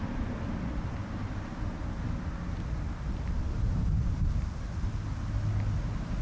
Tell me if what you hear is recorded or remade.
recorded